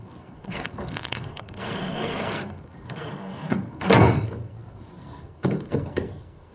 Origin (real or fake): fake